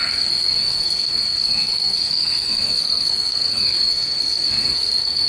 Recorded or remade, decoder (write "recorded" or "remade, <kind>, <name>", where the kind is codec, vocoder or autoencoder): remade, codec, SNAC